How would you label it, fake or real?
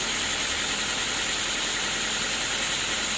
real